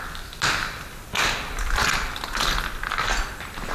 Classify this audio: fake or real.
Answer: real